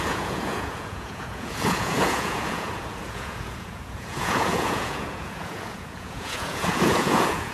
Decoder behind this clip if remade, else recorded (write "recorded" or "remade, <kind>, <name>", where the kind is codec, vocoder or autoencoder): remade, vocoder, Vocos